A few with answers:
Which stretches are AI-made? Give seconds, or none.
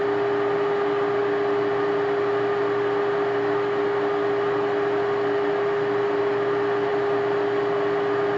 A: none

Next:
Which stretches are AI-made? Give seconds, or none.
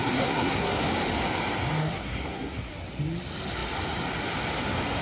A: 0.0-0.8 (codec, SNAC); 1.8-2.7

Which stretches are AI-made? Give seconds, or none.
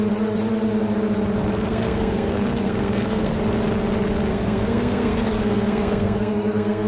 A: 1.7-3.4 (codec, SNAC); 4.3-6.9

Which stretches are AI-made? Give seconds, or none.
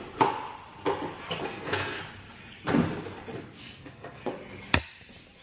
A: 1.4-2.0 (codec, SNAC); 3.6-4.3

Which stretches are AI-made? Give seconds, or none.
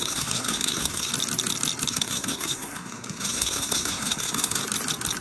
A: 0.0-1.1 (codec, SNAC); 1.9-4.6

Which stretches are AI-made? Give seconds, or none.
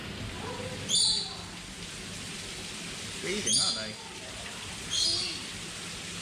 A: none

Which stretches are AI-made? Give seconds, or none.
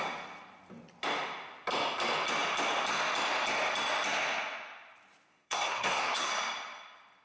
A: 5.3-6.3 (codec, SNAC)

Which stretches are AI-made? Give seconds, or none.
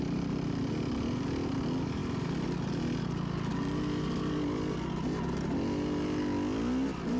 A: none